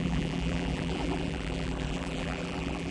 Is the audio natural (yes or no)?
no